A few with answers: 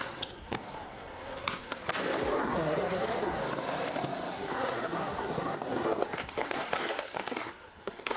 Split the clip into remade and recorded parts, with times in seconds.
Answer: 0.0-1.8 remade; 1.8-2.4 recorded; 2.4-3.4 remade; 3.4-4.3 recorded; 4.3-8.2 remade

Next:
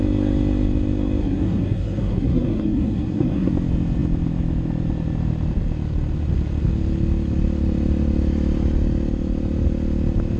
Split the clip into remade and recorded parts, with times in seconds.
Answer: 0.0-1.2 recorded; 1.2-3.5 remade; 3.5-10.4 recorded

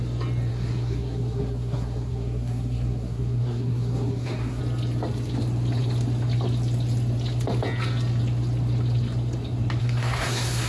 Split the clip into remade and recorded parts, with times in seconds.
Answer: 0.0-0.5 recorded; 0.5-4.6 remade; 4.6-9.8 recorded; 9.8-10.7 remade

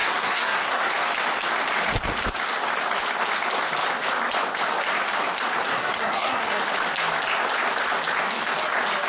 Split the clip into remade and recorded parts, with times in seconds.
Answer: 0.0-0.9 remade; 0.9-5.7 recorded; 5.7-6.6 remade; 6.6-9.1 recorded

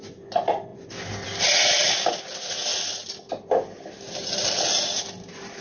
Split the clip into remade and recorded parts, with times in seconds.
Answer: 0.0-5.6 recorded